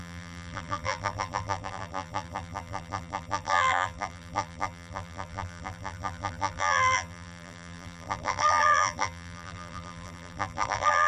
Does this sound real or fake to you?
fake